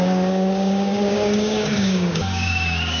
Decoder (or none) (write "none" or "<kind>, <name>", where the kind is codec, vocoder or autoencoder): codec, DAC